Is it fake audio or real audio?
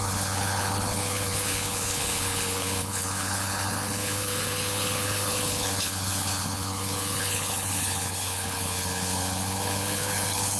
fake